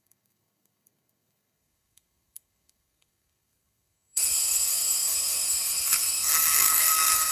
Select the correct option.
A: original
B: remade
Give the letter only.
B